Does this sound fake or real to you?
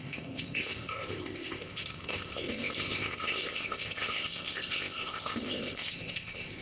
fake